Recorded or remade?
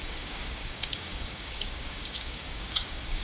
remade